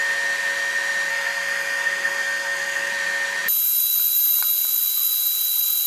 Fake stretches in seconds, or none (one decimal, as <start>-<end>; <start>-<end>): 1.1-2.9